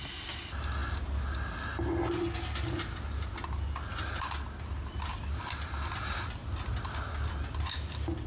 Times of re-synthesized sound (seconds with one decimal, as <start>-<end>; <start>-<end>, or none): none